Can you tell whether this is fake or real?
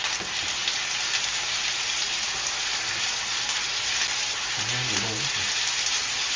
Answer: real